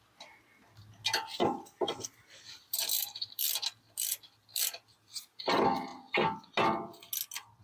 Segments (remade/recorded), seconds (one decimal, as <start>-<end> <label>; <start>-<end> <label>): 0.0-1.4 recorded; 1.4-4.6 remade; 4.6-7.6 recorded